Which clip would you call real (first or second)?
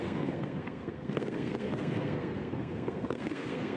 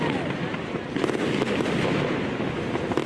second